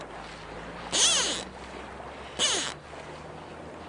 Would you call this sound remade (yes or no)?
no